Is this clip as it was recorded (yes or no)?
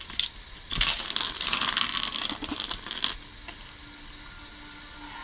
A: yes